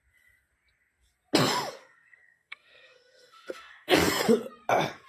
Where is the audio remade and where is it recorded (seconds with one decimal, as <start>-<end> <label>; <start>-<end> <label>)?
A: 0.0-1.8 recorded; 1.8-4.2 remade; 4.2-5.1 recorded